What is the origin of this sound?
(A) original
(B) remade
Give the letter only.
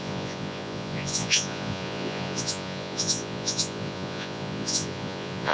B